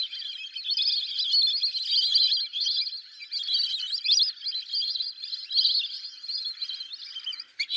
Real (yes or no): yes